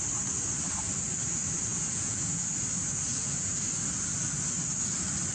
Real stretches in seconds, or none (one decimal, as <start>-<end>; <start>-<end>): 0.0-1.7; 2.4-3.1; 3.6-5.3